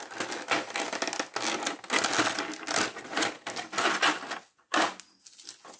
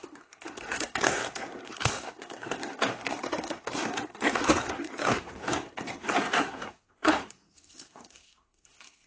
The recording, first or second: first